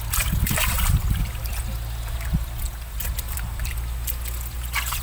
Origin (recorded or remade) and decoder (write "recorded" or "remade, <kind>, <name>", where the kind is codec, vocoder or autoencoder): recorded